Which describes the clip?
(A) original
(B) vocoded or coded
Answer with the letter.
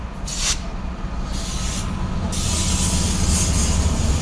A